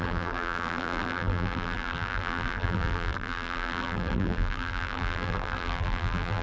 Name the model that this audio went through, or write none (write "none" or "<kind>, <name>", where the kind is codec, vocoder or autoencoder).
vocoder, BigVGAN v2